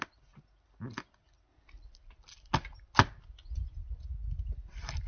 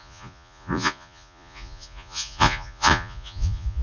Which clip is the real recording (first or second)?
first